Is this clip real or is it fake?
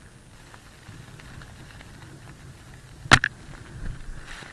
real